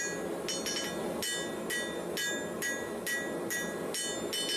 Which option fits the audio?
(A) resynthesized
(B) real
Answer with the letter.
B